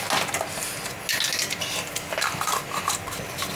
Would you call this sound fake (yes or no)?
no